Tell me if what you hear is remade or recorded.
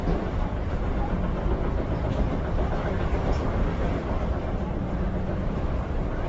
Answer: remade